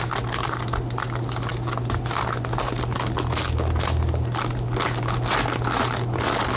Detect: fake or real real